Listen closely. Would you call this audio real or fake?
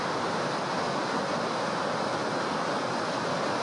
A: real